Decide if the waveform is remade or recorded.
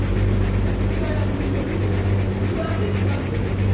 recorded